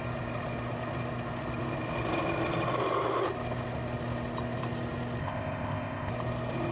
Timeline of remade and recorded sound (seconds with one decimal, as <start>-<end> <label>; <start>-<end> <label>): 0.0-5.2 recorded; 5.2-6.1 remade; 6.1-6.7 recorded